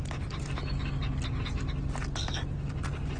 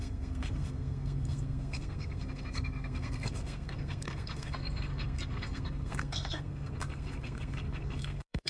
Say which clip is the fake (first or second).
second